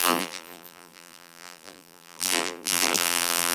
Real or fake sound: fake